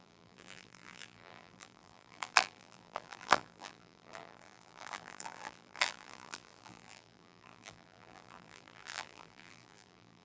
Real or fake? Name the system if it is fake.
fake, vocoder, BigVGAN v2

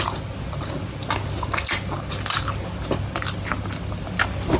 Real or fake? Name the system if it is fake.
real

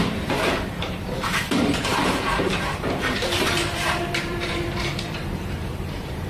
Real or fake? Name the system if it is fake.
fake, vocoder, BigVGAN v2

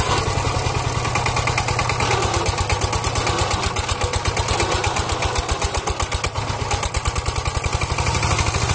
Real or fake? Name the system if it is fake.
real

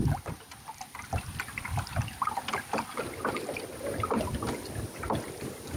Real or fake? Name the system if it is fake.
real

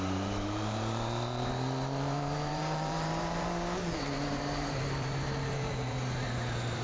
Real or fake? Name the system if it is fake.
fake, vocoder, BigVGAN v2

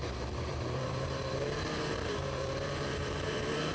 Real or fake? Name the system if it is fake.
fake, vocoder, BigVGAN v2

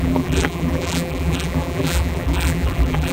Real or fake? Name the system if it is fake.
fake, vocoder, BigVGAN v2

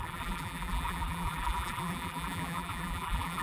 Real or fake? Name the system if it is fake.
fake, vocoder, BigVGAN v2